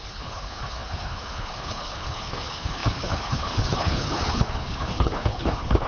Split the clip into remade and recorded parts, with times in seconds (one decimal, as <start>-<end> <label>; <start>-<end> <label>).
0.0-5.9 remade